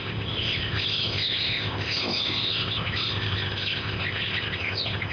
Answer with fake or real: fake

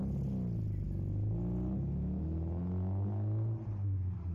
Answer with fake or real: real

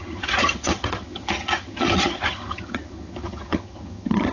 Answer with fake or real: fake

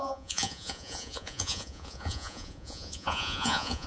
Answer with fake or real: fake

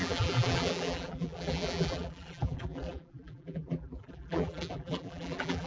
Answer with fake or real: fake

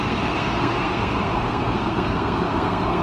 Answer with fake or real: fake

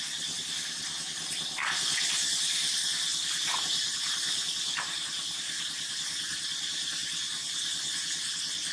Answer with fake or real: real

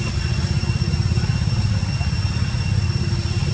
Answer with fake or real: real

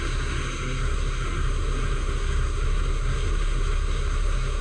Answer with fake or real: fake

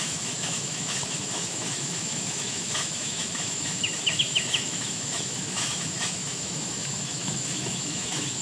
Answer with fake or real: fake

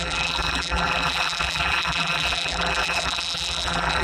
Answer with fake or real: fake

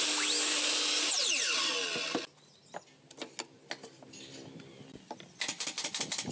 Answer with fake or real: real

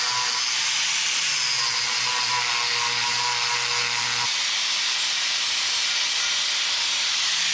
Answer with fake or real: real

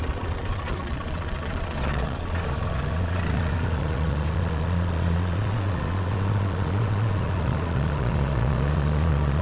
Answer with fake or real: fake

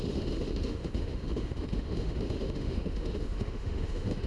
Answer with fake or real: fake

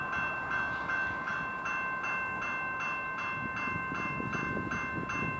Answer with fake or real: real